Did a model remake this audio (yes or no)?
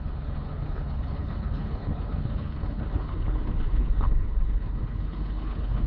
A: yes